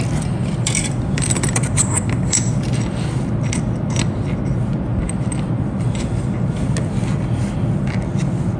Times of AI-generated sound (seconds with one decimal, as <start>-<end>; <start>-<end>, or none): 0.4-2.5; 4.9-5.5